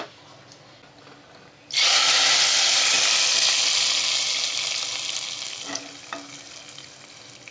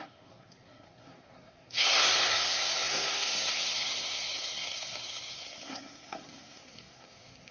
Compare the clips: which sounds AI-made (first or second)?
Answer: second